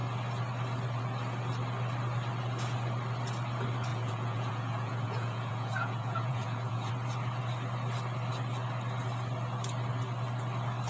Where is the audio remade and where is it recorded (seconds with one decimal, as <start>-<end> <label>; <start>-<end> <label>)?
0.0-3.9 recorded; 3.9-6.9 remade; 6.9-10.9 recorded

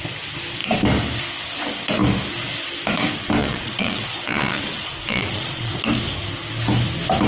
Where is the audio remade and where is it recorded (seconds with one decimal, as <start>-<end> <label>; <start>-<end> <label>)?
0.0-3.4 recorded; 3.4-5.7 remade; 5.7-7.3 recorded

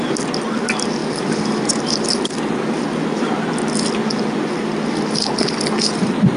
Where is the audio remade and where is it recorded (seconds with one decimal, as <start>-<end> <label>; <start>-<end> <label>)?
0.0-1.0 recorded; 1.0-2.7 remade; 2.7-6.4 recorded

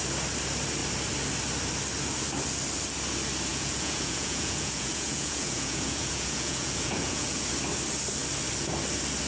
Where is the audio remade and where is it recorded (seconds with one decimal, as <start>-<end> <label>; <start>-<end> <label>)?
0.0-3.5 recorded; 3.5-7.5 remade; 7.5-9.3 recorded

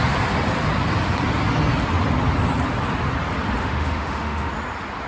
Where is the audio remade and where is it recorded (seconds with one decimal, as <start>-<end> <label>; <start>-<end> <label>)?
0.0-3.6 recorded; 3.6-4.5 remade; 4.5-5.1 recorded

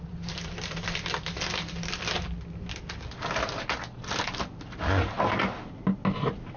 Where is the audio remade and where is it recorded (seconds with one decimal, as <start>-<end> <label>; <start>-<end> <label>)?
0.0-6.6 recorded

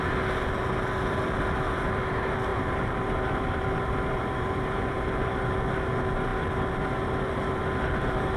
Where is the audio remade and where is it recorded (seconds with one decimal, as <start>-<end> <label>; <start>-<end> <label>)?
0.0-2.5 recorded; 2.5-5.5 remade; 5.5-8.4 recorded

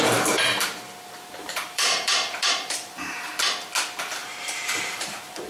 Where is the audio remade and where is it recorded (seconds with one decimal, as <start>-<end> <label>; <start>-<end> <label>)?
0.0-1.4 recorded; 1.4-3.3 remade; 3.3-4.2 recorded; 4.2-5.5 remade